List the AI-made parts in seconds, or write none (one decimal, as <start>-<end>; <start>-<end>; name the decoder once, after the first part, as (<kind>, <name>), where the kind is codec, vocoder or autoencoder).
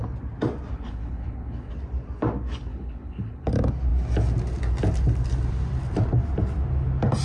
0.7-1.7 (codec, HILCodec); 2.7-3.5